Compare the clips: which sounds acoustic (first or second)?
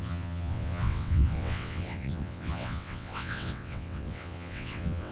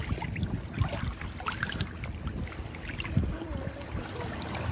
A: second